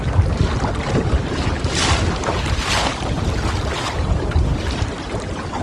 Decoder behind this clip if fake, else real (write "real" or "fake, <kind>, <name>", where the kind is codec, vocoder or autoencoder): real